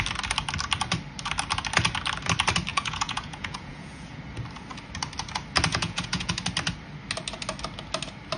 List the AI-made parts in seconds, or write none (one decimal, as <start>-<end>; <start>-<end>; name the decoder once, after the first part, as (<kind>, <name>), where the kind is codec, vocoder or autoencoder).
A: 2.7-4.2 (vocoder, Vocos); 5.7-6.3